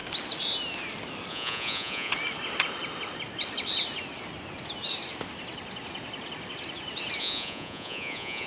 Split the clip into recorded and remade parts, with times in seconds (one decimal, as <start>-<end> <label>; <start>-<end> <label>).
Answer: 0.0-1.3 recorded; 1.3-2.1 remade; 2.1-7.2 recorded; 7.2-8.5 remade